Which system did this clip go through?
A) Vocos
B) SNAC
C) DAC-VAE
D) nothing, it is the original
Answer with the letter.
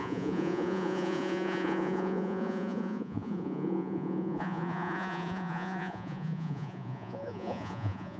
A